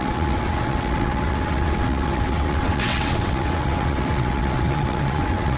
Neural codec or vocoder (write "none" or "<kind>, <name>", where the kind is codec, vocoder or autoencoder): vocoder, WaveNeXt